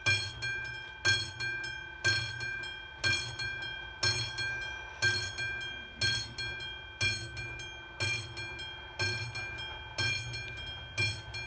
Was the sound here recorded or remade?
recorded